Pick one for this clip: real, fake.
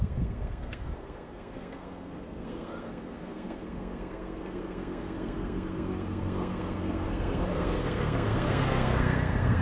fake